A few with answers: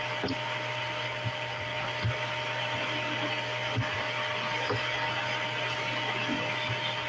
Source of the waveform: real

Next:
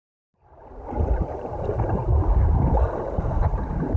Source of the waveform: fake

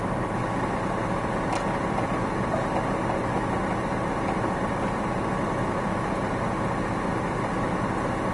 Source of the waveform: real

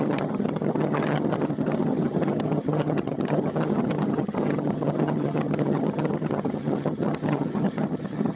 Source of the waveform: fake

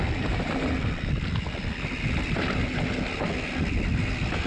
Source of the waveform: real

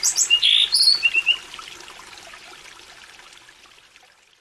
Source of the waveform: real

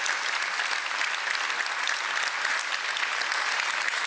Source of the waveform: real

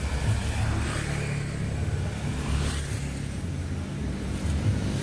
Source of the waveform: real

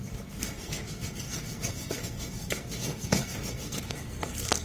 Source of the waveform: fake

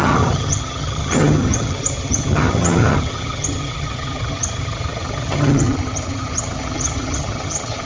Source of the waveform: fake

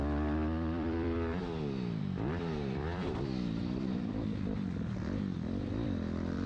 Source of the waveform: fake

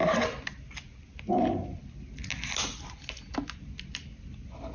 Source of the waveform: real